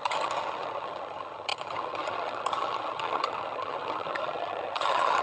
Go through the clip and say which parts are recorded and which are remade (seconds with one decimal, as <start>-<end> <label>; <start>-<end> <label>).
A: 0.0-5.2 remade

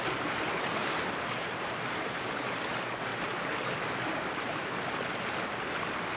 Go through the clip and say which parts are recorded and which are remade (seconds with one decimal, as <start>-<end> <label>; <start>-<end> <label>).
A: 0.0-3.1 remade; 3.1-6.2 recorded

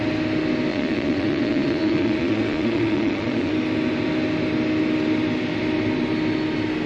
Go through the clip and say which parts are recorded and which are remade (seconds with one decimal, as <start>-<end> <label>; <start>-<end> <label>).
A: 0.0-0.7 recorded; 0.7-3.5 remade; 3.5-6.9 recorded

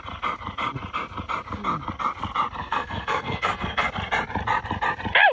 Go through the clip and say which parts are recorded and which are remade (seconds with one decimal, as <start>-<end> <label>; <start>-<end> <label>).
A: 0.0-2.6 recorded; 2.6-3.9 remade; 3.9-5.3 recorded

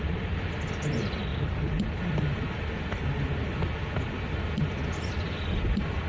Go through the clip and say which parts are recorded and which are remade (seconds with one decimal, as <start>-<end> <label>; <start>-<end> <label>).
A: 0.0-6.1 recorded

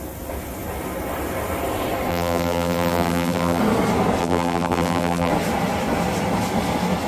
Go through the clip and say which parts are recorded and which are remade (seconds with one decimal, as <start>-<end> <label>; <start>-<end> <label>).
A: 0.0-2.1 recorded; 2.1-3.6 remade; 3.6-4.2 recorded; 4.2-5.3 remade; 5.3-7.1 recorded

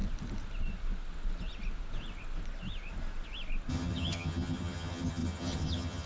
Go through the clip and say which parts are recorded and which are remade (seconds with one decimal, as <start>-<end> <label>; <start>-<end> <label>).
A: 0.0-3.7 recorded; 3.7-6.1 remade

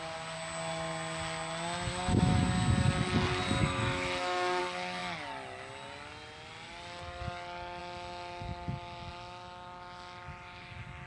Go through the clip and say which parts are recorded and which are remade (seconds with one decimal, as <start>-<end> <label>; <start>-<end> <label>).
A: 0.0-1.9 recorded; 1.9-2.4 remade; 2.4-3.6 recorded; 3.6-4.6 remade; 4.6-11.1 recorded